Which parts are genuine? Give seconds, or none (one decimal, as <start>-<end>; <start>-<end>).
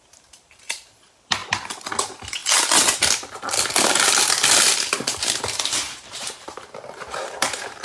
1.4-1.9; 2.4-4.8